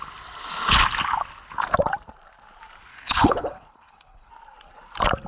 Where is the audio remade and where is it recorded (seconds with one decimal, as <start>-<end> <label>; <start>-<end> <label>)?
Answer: 0.0-2.9 recorded; 2.9-4.3 remade; 4.3-5.3 recorded